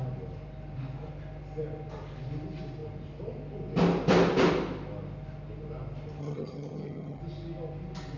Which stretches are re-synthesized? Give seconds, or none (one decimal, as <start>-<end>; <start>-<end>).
6.2-7.2